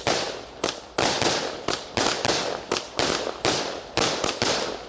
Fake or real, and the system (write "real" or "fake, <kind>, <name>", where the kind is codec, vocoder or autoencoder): real